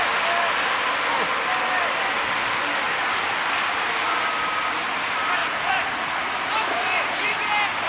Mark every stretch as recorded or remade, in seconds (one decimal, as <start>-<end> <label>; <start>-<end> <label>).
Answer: 0.0-5.4 recorded; 5.4-7.3 remade; 7.3-7.9 recorded